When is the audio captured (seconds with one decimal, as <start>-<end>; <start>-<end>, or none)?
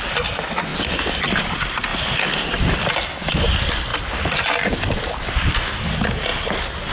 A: 0.0-6.9